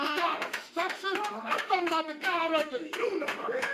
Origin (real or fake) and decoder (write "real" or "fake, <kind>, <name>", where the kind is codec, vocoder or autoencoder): fake, autoencoder, DAC-VAE